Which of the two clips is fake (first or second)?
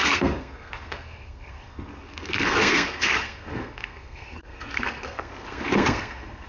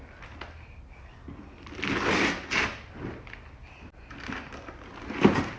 first